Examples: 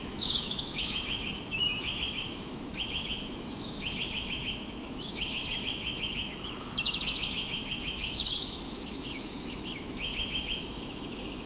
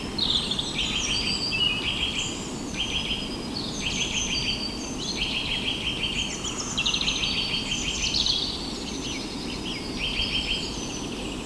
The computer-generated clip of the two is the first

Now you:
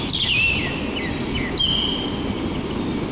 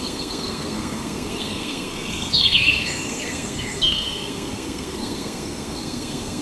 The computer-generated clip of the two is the second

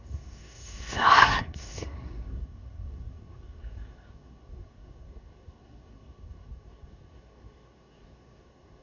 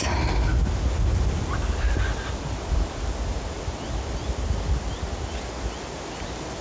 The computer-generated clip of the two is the first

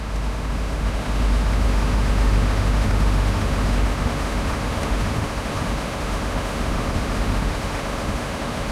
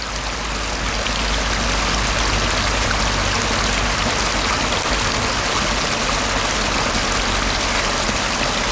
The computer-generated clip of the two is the first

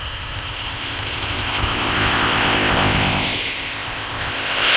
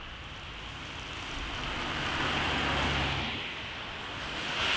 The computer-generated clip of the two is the first